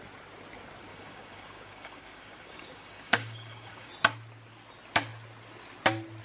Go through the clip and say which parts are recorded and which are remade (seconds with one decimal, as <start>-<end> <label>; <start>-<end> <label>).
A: 0.0-0.9 recorded; 0.9-3.9 remade; 3.9-6.2 recorded